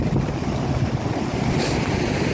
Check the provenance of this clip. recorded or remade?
recorded